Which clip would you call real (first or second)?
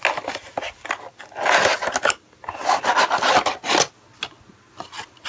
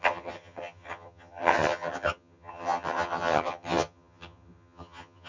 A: first